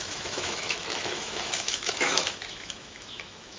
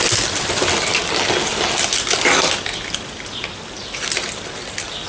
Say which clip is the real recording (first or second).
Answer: second